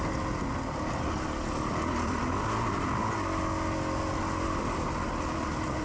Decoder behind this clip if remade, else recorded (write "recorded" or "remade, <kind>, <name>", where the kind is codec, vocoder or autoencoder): recorded